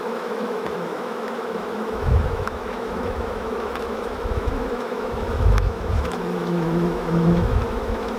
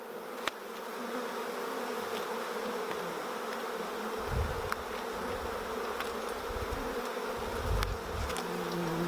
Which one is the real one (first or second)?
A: second